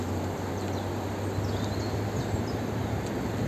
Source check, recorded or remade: recorded